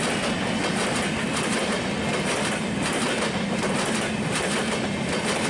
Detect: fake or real real